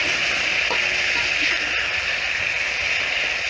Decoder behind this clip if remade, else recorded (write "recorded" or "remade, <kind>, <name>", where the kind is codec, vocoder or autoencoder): recorded